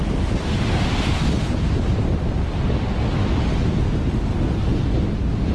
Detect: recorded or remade recorded